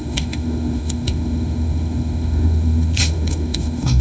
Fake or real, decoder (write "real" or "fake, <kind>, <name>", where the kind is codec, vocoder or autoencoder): fake, autoencoder, DAC-VAE